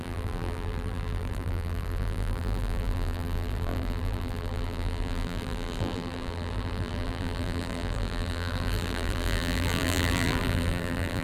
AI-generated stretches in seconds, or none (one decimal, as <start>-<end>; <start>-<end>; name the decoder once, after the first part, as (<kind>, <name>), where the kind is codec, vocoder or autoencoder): 0.0-11.2 (vocoder, BigVGAN v2)